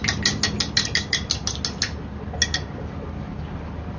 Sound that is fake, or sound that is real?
real